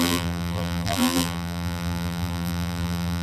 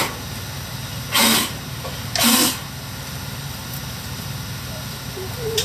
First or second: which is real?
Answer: second